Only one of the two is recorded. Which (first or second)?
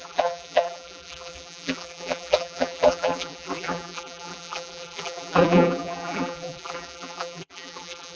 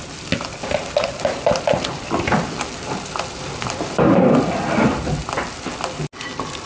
second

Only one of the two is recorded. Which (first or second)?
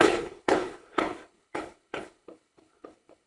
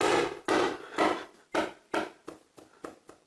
second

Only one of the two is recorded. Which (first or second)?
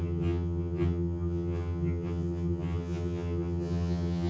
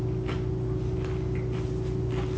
second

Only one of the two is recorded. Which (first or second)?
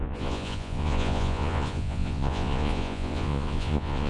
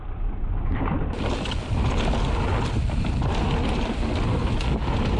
second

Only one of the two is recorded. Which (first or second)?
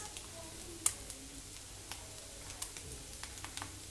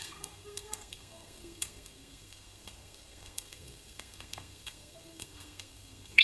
first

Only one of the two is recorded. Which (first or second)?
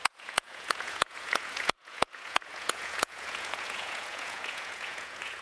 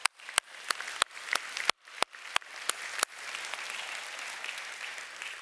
second